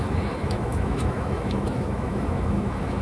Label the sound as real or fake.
fake